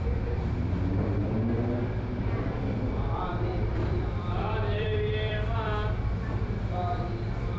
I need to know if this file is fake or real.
fake